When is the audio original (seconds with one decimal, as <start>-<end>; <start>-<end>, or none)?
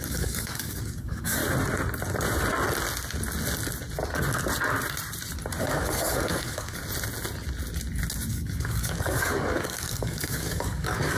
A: 1.4-5.6; 6.8-8.3